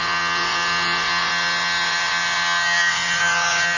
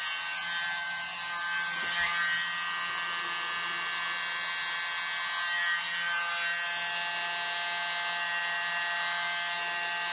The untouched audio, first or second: second